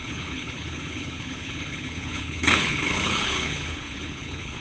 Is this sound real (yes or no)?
no